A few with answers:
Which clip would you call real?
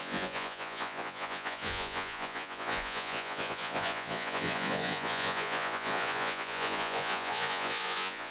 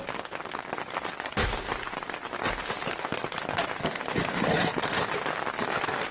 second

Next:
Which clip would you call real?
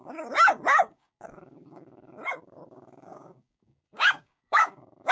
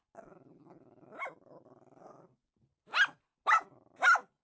second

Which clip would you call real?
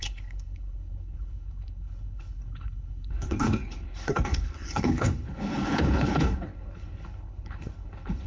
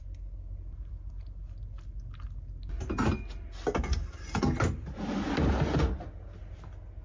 second